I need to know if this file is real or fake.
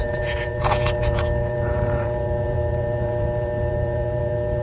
fake